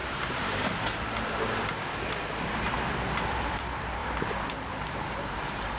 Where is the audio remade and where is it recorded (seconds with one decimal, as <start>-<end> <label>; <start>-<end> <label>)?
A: 0.0-4.0 remade; 4.0-4.5 recorded; 4.5-5.8 remade